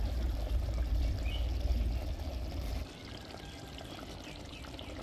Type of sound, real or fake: real